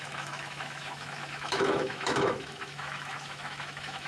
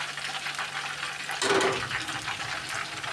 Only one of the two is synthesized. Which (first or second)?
first